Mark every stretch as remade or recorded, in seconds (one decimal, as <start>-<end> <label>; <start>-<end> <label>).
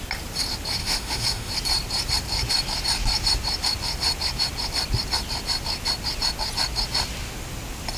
0.0-0.8 recorded; 0.8-1.5 remade; 1.5-8.0 recorded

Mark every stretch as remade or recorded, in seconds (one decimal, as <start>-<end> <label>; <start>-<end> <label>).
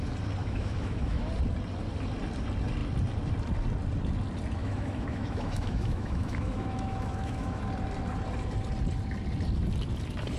0.0-0.4 recorded; 0.4-1.3 remade; 1.3-4.6 recorded; 4.6-7.6 remade; 7.6-10.4 recorded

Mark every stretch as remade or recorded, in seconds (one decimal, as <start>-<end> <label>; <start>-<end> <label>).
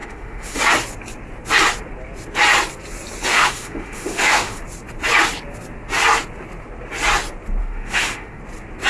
0.0-0.6 remade; 0.6-3.3 recorded; 3.3-4.6 remade; 4.6-7.6 recorded; 7.6-8.4 remade; 8.4-8.9 recorded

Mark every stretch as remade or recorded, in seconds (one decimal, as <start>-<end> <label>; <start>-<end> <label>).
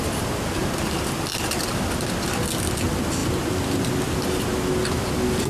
0.0-5.5 recorded